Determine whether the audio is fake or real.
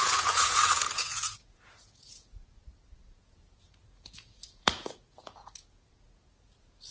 fake